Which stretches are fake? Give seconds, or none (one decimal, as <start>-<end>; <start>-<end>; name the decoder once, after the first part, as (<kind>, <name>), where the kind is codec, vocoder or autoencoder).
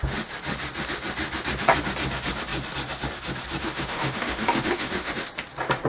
3.6-5.1 (autoencoder, DAC-VAE)